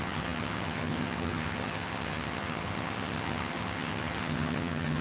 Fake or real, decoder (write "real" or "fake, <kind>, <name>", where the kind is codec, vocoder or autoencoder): fake, vocoder, HiFi-GAN